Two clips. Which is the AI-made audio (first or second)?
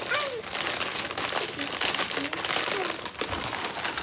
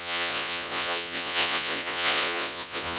second